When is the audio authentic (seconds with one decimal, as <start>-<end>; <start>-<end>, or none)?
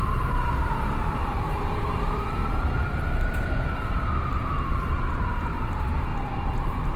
2.4-5.0; 6.1-7.0